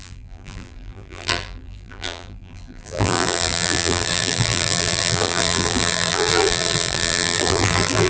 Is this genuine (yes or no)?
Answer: no